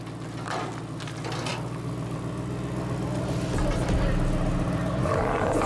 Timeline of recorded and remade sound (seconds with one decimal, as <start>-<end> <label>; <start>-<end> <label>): 0.0-5.7 recorded